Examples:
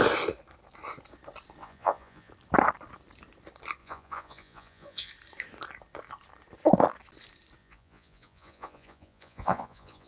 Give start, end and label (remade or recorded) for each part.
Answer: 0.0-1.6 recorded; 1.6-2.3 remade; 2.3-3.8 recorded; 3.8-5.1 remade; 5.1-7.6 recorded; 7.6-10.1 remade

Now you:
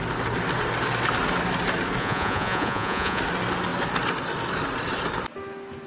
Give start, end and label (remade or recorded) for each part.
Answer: 0.0-2.0 recorded; 2.0-3.2 remade; 3.2-5.9 recorded